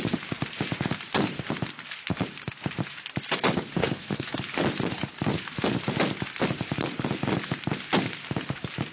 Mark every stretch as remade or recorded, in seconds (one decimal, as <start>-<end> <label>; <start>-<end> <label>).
0.0-3.8 recorded; 3.8-4.4 remade; 4.4-8.9 recorded